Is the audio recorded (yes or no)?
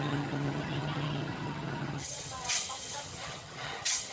no